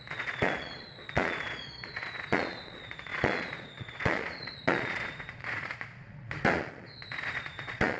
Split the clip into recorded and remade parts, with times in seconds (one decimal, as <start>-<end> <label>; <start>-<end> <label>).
0.0-8.0 remade